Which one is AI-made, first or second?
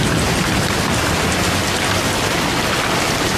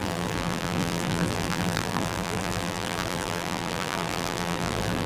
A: second